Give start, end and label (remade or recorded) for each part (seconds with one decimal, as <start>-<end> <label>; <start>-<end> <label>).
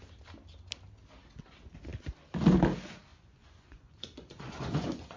0.0-3.1 recorded; 3.1-5.2 remade